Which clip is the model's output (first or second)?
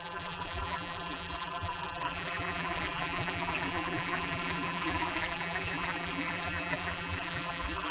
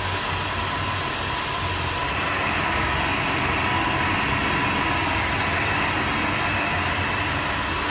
first